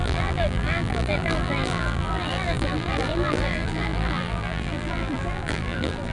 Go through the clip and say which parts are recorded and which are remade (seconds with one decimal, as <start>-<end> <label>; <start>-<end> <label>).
0.0-6.1 remade